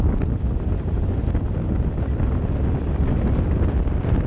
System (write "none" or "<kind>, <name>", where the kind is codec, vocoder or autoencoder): none